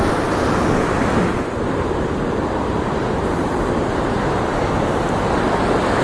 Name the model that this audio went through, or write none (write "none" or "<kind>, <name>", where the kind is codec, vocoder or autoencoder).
none